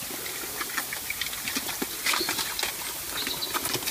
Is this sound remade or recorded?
recorded